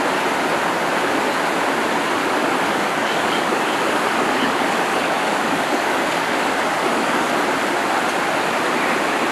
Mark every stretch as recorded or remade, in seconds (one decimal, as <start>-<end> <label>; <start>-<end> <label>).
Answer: 0.0-2.2 recorded; 2.2-7.3 remade; 7.3-9.3 recorded